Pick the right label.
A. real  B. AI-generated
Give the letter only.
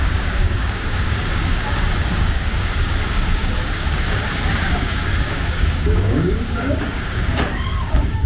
B